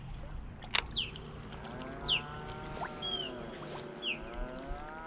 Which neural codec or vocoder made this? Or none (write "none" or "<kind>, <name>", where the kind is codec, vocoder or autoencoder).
none